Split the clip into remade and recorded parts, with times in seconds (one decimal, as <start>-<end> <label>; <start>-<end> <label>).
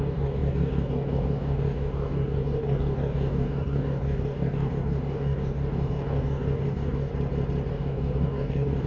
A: 0.0-7.1 remade; 7.1-7.7 recorded; 7.7-8.9 remade